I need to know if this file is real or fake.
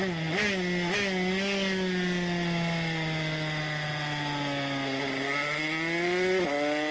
real